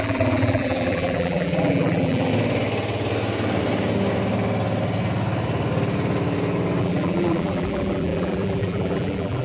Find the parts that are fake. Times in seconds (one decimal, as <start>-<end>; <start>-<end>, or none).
0.0-2.3; 6.8-9.4